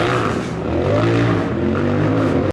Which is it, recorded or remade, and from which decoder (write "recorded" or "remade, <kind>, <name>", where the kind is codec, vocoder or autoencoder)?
recorded